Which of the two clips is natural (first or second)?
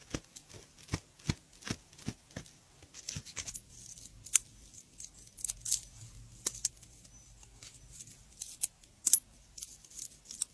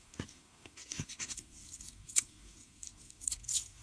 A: first